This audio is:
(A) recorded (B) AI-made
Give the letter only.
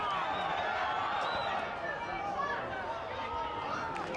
A